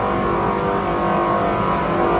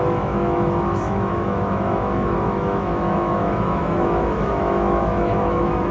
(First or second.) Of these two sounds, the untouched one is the first